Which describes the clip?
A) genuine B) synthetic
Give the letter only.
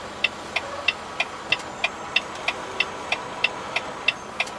A